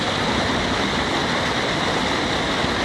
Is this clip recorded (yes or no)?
yes